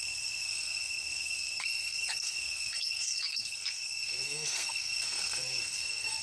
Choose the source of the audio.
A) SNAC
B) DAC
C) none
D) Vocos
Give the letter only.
A